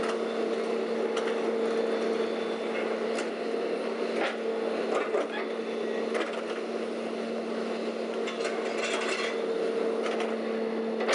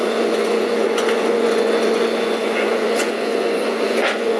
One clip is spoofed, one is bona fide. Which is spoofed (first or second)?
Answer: second